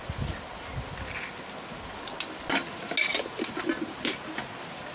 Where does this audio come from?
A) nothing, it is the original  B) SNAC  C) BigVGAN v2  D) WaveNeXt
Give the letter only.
A